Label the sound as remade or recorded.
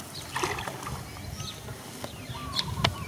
recorded